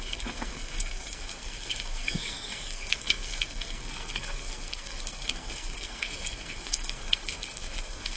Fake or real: fake